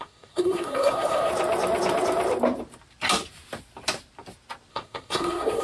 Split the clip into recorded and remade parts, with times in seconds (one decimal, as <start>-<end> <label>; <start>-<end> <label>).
0.0-1.3 remade; 1.3-4.7 recorded; 4.7-5.6 remade